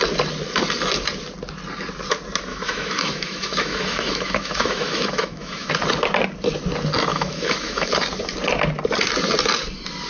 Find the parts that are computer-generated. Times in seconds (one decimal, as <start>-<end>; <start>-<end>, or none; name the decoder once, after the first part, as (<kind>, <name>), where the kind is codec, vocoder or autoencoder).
2.5-5.7 (autoencoder, DAC-VAE); 7.1-7.9